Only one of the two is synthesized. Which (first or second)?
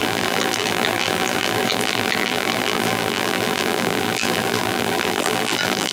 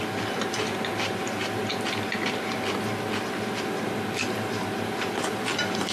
first